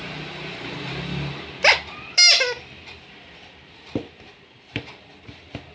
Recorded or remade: recorded